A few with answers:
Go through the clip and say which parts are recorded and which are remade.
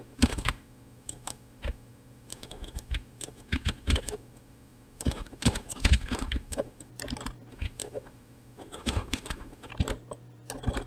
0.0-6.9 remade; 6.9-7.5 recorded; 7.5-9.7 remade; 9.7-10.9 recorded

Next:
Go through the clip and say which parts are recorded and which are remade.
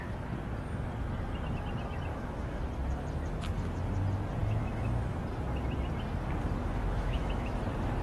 0.0-2.1 recorded; 2.1-2.6 remade; 2.6-4.4 recorded; 4.4-5.1 remade; 5.1-6.6 recorded; 6.6-7.6 remade; 7.6-8.0 recorded